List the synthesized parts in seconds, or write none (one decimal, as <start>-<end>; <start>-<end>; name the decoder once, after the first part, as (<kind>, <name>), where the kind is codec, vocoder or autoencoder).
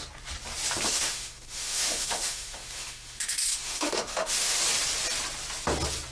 0.9-4.6 (autoencoder, DAC-VAE)